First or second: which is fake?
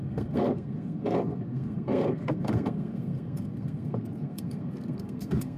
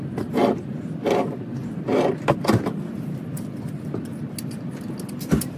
first